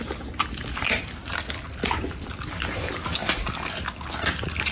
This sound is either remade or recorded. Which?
recorded